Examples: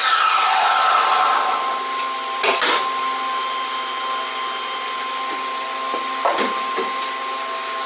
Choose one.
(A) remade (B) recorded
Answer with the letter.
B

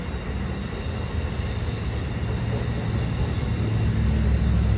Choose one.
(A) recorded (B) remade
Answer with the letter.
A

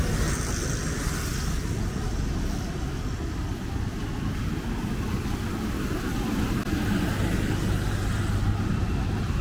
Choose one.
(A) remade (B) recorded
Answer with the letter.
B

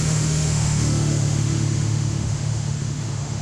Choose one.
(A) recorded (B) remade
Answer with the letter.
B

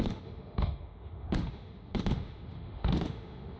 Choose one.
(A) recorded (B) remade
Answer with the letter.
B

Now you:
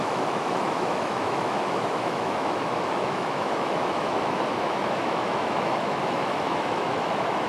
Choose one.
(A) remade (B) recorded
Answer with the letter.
A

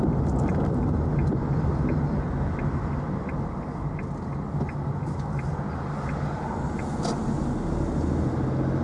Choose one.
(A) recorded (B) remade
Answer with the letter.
A